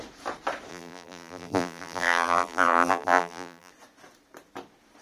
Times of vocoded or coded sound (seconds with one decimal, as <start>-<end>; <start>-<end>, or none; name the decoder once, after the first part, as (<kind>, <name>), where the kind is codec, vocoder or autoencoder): 0.7-3.7 (vocoder, BigVGAN v2)

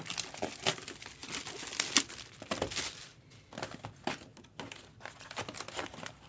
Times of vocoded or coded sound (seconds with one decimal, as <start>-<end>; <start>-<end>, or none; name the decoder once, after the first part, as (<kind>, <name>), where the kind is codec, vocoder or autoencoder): none